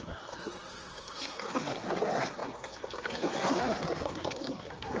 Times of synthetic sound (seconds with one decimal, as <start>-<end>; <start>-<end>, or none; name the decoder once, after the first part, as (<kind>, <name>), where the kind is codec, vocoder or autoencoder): 0.0-5.0 (codec, SNAC)